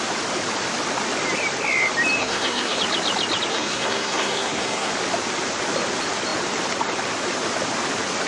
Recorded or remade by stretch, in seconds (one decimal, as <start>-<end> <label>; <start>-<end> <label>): 0.0-2.2 recorded; 2.2-2.8 remade; 2.8-3.5 recorded; 3.5-4.9 remade; 4.9-8.3 recorded